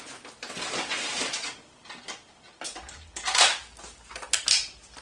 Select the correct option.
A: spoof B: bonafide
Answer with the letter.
B